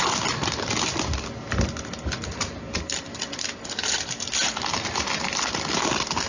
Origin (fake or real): real